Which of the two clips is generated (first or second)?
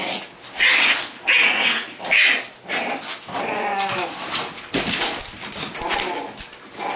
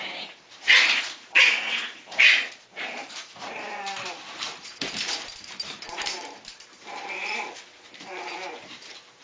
second